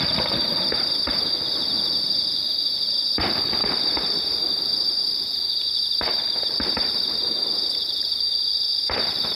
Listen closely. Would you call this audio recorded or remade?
remade